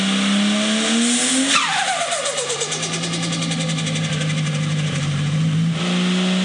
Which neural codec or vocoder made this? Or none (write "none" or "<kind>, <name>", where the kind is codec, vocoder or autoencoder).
none